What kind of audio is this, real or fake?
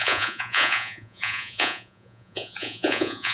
fake